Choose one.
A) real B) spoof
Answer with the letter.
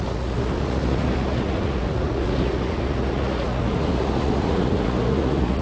B